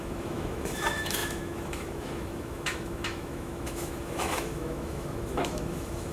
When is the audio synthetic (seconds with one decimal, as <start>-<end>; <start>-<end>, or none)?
0.0-6.1